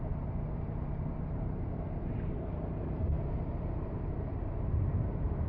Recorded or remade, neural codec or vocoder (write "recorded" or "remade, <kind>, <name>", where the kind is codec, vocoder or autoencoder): remade, vocoder, BigVGAN v2